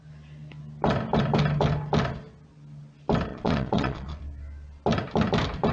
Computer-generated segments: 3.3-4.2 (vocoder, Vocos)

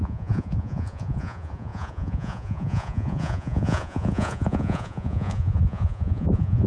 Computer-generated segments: 0.0-6.7 (vocoder, Vocos)

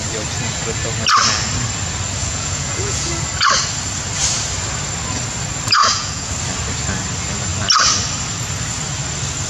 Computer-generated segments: 2.2-3.1 (vocoder, Vocos); 5.8-6.3

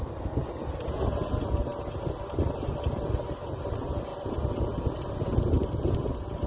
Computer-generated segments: none

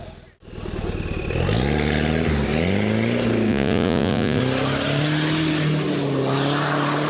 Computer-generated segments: 3.5-4.4 (vocoder, Vocos)